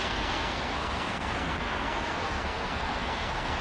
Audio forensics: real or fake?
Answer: fake